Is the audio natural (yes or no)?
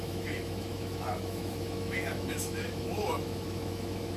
no